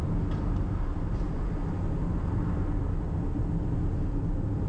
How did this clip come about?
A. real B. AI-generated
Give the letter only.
A